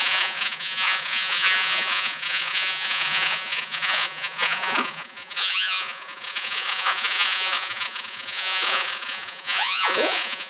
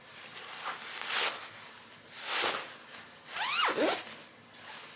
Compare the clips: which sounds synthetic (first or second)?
first